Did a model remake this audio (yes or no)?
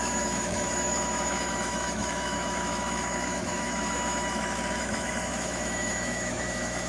yes